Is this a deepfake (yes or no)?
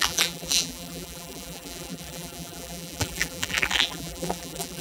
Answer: yes